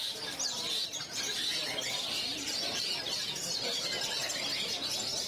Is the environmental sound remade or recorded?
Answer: recorded